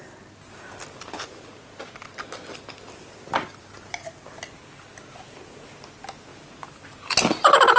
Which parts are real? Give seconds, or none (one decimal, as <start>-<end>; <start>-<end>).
0.0-7.8